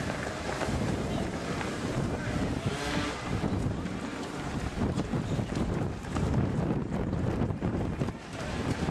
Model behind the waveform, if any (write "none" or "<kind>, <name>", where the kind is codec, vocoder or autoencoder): vocoder, BigVGAN v2